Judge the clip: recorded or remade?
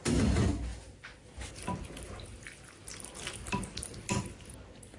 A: recorded